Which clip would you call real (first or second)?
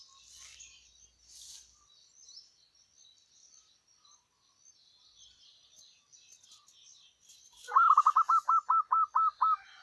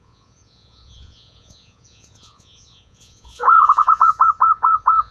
first